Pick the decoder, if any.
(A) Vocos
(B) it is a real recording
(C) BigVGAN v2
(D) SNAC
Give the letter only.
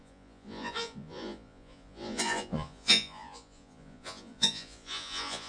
A